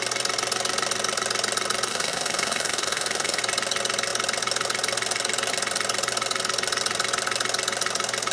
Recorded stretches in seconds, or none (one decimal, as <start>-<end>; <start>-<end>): 0.0-1.9; 3.4-8.3